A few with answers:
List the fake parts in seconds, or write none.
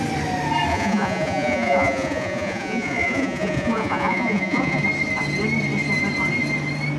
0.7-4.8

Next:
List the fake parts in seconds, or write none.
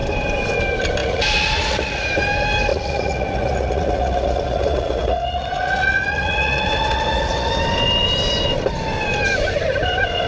1.0-2.1; 2.7-7.5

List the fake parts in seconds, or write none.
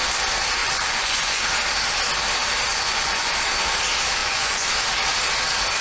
0.6-1.4; 2.7-3.3; 4.2-4.7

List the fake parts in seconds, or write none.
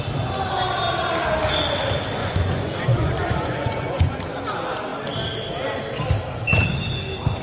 2.2-4.1